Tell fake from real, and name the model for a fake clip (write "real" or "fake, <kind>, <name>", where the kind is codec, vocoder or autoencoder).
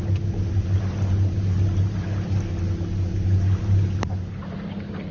real